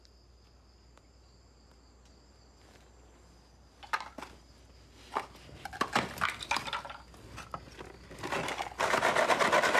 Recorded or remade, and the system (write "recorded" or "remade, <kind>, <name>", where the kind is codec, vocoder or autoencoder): recorded